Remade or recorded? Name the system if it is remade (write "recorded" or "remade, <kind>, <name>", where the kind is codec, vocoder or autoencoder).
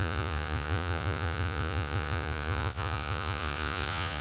remade, vocoder, Vocos